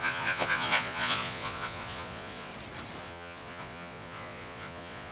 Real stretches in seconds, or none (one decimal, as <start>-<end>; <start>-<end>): 2.5-3.0